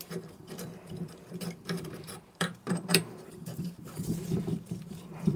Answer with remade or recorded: remade